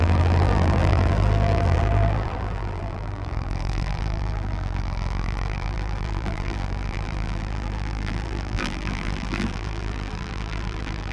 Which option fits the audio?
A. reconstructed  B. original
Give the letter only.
A